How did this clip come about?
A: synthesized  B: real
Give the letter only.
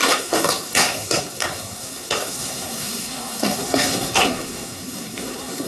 A